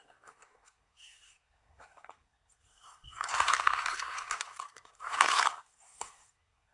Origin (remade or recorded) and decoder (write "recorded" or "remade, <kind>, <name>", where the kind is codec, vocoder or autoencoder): remade, codec, SNAC